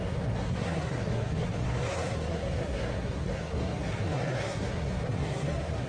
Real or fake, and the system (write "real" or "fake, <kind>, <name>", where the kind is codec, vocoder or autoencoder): fake, codec, SNAC